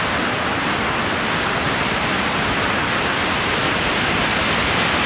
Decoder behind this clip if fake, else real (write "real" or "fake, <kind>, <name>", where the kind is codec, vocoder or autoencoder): real